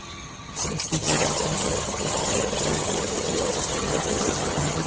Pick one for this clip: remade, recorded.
remade